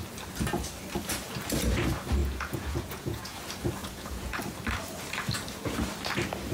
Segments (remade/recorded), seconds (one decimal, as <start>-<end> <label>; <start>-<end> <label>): 0.0-2.2 recorded; 2.2-3.4 remade; 3.4-3.8 recorded; 3.8-4.4 remade; 4.4-6.5 recorded